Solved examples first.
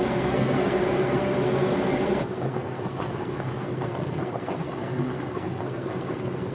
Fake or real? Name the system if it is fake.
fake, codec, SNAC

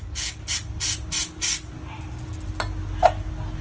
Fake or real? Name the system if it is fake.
real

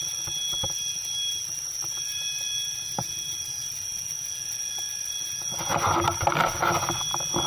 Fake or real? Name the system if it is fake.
real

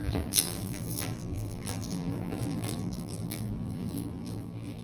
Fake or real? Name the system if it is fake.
fake, vocoder, BigVGAN v2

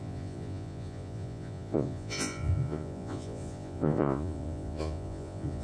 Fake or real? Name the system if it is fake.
fake, vocoder, Vocos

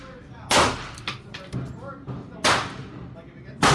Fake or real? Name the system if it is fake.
real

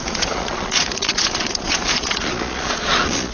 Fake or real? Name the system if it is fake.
fake, vocoder, Vocos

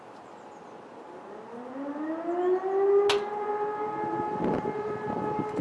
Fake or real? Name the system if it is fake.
real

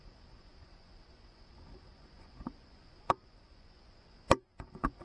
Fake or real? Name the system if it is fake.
fake, vocoder, Vocos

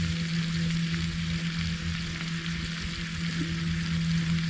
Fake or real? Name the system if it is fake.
real